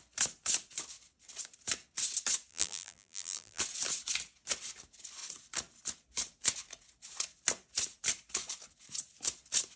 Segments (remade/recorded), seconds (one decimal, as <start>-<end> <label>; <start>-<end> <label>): 0.0-2.5 recorded; 2.5-3.6 remade; 3.6-9.8 recorded